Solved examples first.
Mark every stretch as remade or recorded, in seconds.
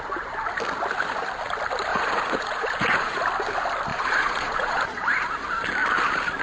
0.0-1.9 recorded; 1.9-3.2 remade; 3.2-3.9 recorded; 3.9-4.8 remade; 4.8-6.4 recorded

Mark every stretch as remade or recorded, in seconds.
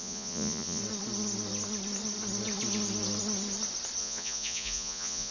0.0-0.8 remade; 0.8-4.0 recorded; 4.0-5.3 remade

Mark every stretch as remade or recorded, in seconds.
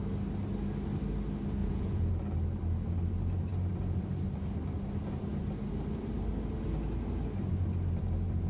0.0-1.6 recorded; 1.6-2.1 remade; 2.1-8.5 recorded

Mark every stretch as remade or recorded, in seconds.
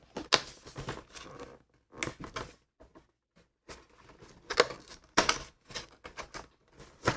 0.0-7.2 recorded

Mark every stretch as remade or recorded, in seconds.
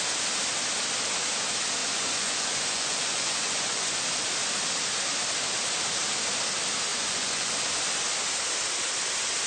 0.0-1.8 recorded; 1.8-4.0 remade; 4.0-6.9 recorded; 6.9-7.5 remade; 7.5-9.5 recorded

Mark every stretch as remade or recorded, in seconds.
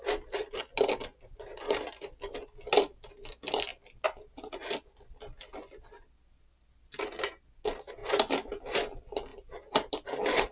0.0-10.5 recorded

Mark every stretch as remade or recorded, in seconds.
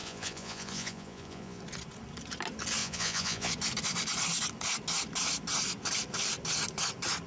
0.0-1.6 remade; 1.6-2.8 recorded; 2.8-3.5 remade; 3.5-7.3 recorded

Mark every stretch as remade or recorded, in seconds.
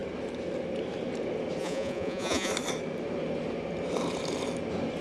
0.0-1.6 recorded; 1.6-2.5 remade; 2.5-5.0 recorded